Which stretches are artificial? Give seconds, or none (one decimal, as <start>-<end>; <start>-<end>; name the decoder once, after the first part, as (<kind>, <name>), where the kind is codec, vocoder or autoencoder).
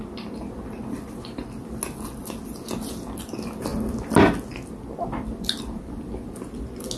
none